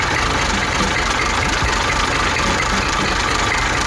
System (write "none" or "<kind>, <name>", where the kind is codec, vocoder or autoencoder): none